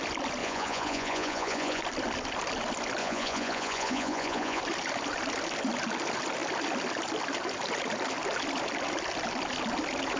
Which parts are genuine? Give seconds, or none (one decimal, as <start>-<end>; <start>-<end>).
0.0-0.4; 1.8-3.0; 4.6-10.2